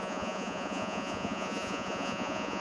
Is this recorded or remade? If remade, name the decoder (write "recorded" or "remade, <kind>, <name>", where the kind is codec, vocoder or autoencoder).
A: remade, vocoder, Vocos